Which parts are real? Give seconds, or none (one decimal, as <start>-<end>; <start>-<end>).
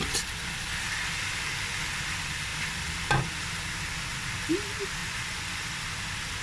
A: 0.0-5.0; 5.6-6.4